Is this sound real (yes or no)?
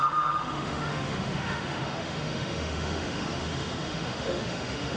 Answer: no